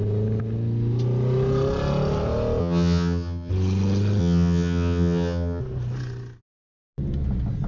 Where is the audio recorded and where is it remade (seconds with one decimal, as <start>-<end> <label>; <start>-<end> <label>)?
0.0-2.6 recorded; 2.6-3.5 remade; 3.5-4.2 recorded; 4.2-5.6 remade; 5.6-7.7 recorded

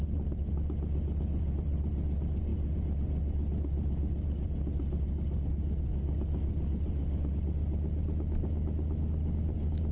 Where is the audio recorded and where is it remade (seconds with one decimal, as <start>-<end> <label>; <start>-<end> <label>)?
0.0-9.9 recorded

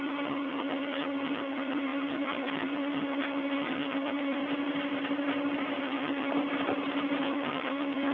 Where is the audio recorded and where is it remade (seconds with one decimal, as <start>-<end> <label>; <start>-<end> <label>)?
0.0-4.4 remade; 4.4-5.8 recorded; 5.8-6.3 remade; 6.3-7.2 recorded; 7.2-8.1 remade

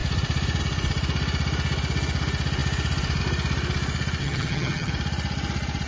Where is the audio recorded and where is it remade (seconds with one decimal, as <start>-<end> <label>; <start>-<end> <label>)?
0.0-4.2 recorded; 4.2-4.9 remade; 4.9-5.9 recorded

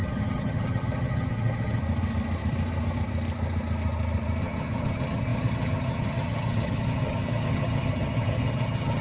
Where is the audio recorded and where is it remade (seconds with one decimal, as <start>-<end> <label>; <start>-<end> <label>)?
0.0-1.8 remade; 1.8-4.4 recorded; 4.4-9.0 remade

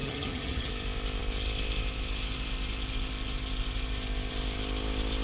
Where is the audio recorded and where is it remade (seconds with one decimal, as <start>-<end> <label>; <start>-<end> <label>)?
0.0-0.7 remade; 0.7-5.2 recorded